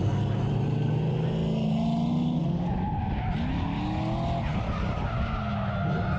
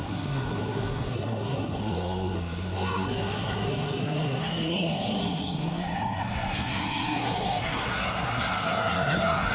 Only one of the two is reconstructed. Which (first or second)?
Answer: second